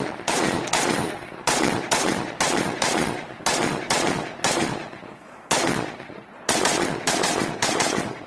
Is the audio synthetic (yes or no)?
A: yes